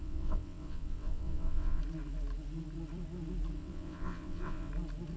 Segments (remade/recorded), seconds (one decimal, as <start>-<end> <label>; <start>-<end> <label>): 0.0-1.8 remade; 1.8-3.6 recorded; 3.6-4.7 remade; 4.7-5.2 recorded